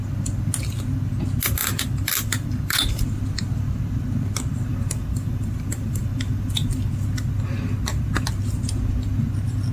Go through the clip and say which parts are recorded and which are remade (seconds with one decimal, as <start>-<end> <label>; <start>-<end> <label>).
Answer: 0.0-1.6 recorded; 1.6-3.0 remade; 3.0-4.7 recorded; 4.7-6.9 remade; 6.9-9.7 recorded